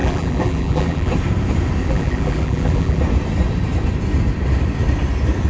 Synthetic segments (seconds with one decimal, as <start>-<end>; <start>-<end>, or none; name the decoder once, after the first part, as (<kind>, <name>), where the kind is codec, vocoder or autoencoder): 0.0-1.1 (vocoder, BigVGAN v2); 1.8-3.0

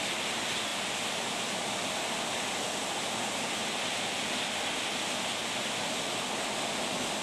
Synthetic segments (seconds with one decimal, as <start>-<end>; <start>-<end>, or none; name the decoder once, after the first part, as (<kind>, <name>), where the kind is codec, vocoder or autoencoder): 0.7-3.1 (vocoder, BigVGAN v2)

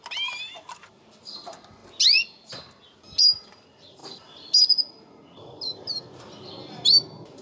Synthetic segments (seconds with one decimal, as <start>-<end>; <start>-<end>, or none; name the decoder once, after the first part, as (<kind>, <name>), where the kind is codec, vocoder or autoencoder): none

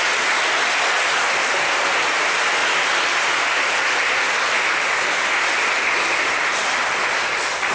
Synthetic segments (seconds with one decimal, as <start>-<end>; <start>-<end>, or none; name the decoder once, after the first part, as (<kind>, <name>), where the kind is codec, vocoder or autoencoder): none

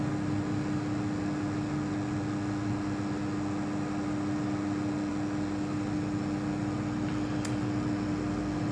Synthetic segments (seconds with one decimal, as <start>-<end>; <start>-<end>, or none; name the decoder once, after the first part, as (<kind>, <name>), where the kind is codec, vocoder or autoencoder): none